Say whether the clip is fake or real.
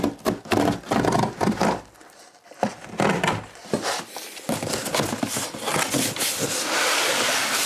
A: real